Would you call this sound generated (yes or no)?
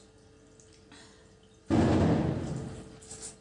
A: no